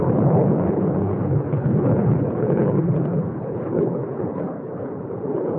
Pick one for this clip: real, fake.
fake